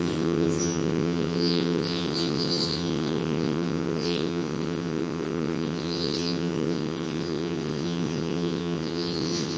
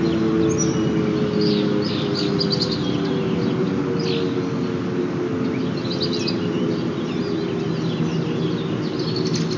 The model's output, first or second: first